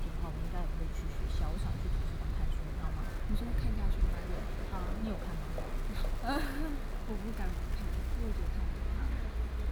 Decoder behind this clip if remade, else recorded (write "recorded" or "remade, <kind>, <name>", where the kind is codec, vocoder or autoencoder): recorded